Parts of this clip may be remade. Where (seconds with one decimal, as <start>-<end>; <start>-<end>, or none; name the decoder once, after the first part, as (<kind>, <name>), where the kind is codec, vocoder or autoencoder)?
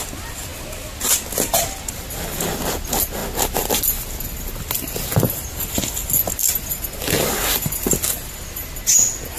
none